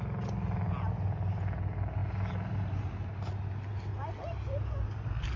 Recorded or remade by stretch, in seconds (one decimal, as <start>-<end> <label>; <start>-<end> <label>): 0.0-5.4 recorded